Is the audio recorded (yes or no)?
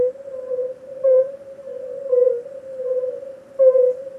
yes